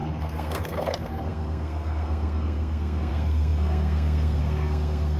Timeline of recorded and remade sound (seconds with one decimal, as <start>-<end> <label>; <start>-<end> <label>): 0.0-5.2 remade